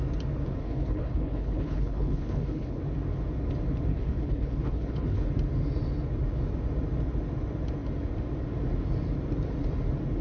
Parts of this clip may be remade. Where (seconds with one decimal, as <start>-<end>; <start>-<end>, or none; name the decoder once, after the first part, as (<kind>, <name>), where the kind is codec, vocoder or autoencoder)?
0.6-2.8 (codec, HILCodec); 3.9-5.3